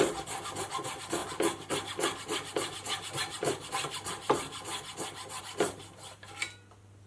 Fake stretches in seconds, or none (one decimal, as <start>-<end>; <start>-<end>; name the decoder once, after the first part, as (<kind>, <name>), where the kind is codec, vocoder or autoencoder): none